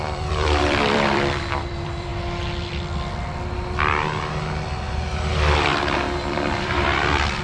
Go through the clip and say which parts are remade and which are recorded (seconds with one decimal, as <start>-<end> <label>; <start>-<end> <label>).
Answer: 0.0-2.1 remade; 2.1-5.3 recorded; 5.3-5.7 remade; 5.7-6.3 recorded; 6.3-7.4 remade